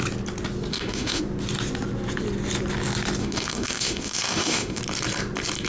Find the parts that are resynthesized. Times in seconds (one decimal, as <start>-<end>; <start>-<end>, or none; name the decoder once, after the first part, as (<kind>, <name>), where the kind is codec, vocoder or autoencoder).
0.7-1.2 (autoencoder, DAC-VAE); 3.2-4.8